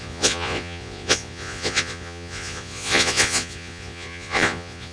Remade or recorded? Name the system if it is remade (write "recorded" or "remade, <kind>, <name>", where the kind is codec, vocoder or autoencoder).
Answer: remade, vocoder, Vocos